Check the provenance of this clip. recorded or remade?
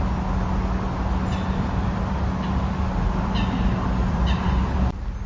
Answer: recorded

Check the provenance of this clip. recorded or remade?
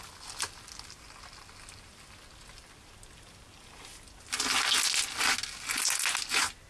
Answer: recorded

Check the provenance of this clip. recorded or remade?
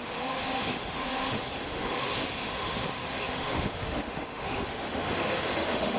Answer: remade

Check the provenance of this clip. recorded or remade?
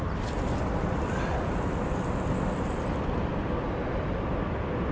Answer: recorded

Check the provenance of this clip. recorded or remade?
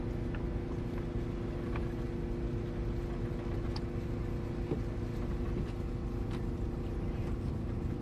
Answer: recorded